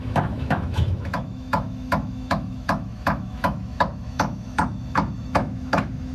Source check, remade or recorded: remade